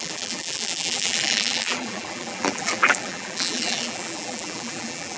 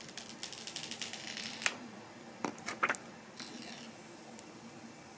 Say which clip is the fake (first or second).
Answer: first